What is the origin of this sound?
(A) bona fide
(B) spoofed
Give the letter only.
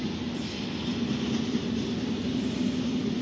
A